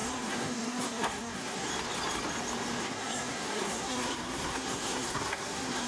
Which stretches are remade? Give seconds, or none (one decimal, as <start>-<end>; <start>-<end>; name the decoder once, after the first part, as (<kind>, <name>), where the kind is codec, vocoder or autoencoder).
0.0-1.7 (codec, SNAC); 2.8-5.9